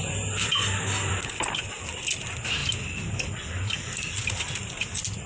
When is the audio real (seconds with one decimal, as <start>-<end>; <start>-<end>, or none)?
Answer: 2.0-5.3